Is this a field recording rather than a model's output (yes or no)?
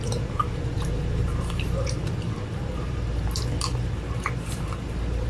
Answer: no